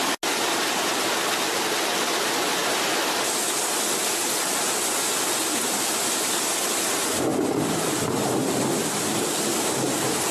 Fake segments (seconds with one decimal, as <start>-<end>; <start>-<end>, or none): none